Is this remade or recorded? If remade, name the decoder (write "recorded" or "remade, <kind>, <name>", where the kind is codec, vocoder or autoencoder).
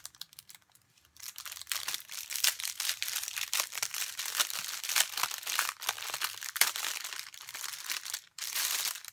remade, vocoder, BigVGAN v2